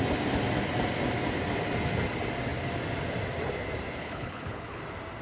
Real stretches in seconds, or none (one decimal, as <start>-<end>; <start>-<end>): 0.0-4.0; 4.8-5.2

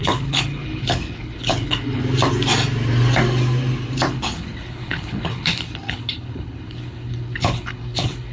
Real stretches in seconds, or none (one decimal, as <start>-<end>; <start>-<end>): 2.0-4.1

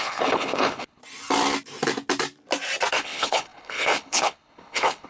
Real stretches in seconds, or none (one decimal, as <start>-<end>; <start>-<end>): 1.0-2.9

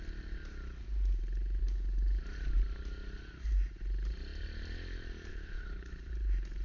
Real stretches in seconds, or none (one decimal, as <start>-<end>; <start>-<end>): 0.0-1.6; 2.2-5.3; 6.1-6.6

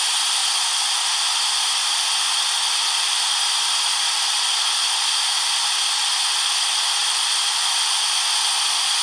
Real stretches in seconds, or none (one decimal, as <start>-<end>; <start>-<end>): 0.0-9.0

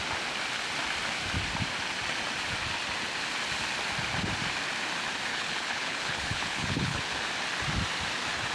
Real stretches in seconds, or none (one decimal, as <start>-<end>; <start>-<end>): 0.0-5.3; 7.0-8.5

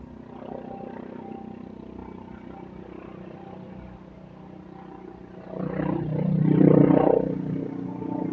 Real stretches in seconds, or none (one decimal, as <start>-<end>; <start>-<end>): 0.0-8.3

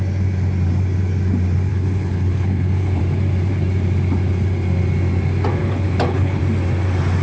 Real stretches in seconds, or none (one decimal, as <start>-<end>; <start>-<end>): 0.0-1.7; 3.0-5.6; 6.4-7.2